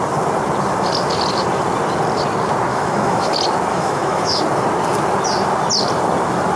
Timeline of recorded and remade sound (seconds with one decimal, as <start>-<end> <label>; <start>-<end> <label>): 0.0-2.7 recorded; 2.7-3.3 remade; 3.3-3.7 recorded; 3.7-4.4 remade; 4.4-6.6 recorded